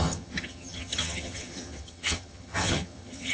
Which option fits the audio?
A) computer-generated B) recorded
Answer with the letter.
A